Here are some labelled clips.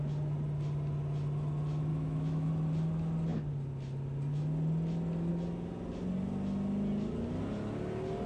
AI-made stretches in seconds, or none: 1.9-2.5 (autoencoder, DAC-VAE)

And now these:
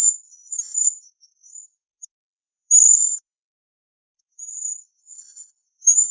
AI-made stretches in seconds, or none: 0.0-6.1 (autoencoder, DAC-VAE)